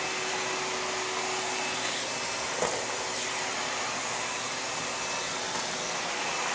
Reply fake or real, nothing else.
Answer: real